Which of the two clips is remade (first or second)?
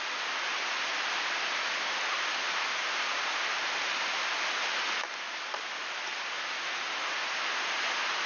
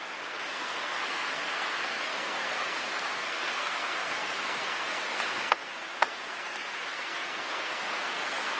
second